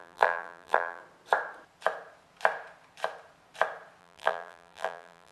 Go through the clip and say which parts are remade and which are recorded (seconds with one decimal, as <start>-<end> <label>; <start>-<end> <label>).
0.0-1.0 remade; 1.0-4.0 recorded; 4.0-5.3 remade